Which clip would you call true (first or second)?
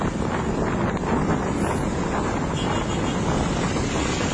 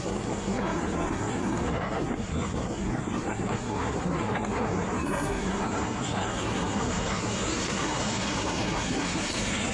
first